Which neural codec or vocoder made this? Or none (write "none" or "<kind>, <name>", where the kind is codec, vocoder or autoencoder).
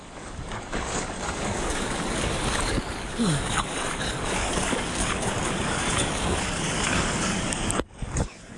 codec, DAC